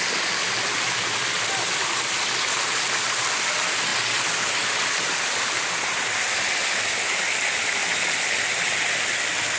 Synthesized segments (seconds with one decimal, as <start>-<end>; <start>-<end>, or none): none